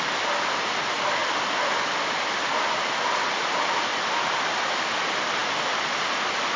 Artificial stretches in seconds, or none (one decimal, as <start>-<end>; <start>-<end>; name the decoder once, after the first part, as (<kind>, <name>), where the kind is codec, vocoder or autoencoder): none